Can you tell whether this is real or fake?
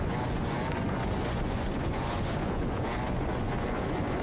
fake